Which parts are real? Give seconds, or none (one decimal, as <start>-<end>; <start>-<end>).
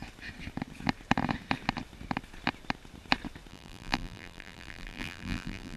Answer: 0.0-3.5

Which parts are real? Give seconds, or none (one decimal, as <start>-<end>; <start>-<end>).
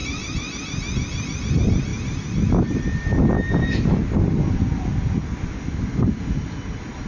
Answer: 0.0-7.1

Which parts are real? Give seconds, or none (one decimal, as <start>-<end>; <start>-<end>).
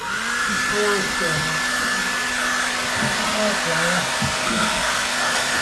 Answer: 0.0-4.4; 5.1-5.6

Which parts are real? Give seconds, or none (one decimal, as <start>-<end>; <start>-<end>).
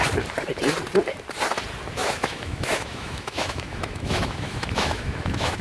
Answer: 0.0-2.0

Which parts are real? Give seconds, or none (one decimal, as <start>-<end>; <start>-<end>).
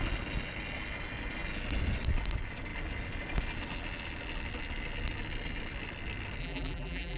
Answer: 0.0-6.4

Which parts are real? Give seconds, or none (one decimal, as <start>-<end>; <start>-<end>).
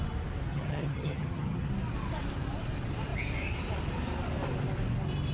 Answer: 0.0-0.5; 1.7-5.3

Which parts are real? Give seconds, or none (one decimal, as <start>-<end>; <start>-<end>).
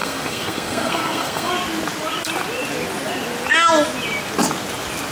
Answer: 1.5-5.1